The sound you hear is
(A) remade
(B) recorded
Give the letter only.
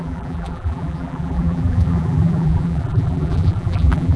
A